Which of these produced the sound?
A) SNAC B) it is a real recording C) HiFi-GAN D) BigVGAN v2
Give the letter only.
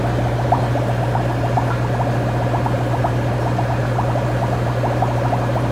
B